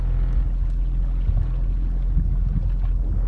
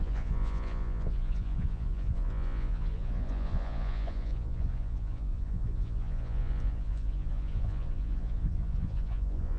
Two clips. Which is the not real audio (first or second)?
second